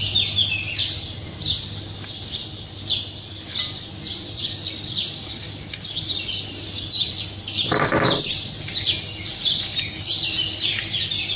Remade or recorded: recorded